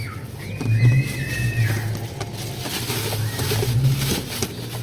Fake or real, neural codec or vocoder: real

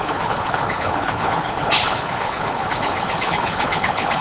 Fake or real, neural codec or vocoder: fake, codec, HILCodec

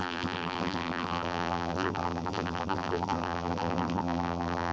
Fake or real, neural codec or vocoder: fake, vocoder, BigVGAN v2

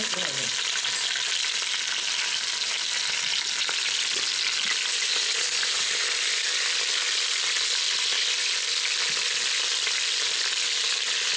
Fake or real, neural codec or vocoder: real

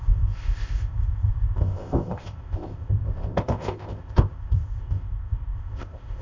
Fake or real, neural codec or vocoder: fake, codec, ZipCodec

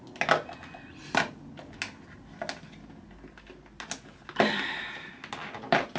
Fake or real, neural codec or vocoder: real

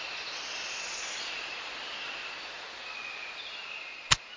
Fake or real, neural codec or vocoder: real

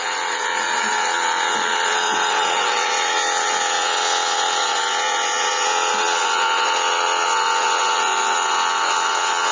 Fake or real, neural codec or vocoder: fake, vocoder, WaveNeXt